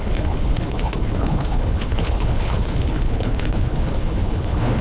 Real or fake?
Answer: fake